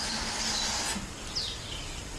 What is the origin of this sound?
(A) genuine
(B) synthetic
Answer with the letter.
A